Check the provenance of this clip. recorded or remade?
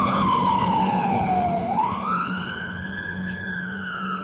remade